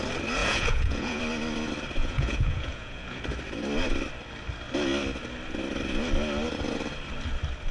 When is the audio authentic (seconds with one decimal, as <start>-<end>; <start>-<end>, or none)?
0.0-0.4; 1.2-2.0; 3.2-7.7